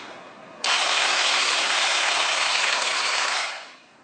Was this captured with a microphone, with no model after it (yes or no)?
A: no